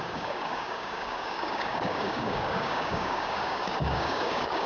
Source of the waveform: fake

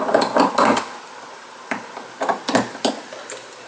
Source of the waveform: real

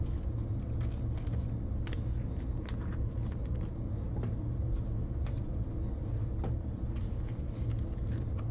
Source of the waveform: real